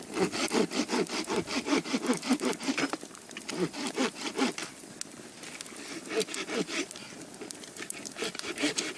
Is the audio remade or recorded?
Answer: recorded